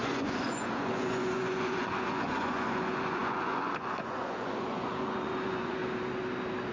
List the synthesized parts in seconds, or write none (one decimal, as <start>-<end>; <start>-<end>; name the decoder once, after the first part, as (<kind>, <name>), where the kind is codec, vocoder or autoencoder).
0.0-5.8 (vocoder, Vocos)